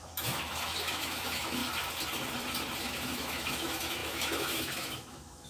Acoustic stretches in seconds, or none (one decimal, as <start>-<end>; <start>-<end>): 1.6-2.8